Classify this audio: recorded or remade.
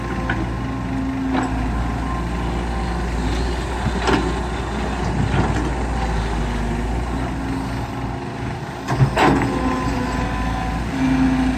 recorded